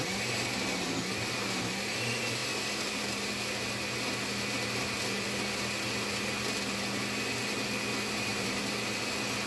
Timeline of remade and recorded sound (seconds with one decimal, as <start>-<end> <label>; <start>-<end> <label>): 0.0-2.4 recorded; 2.4-3.0 remade; 3.0-8.3 recorded; 8.3-9.0 remade; 9.0-9.5 recorded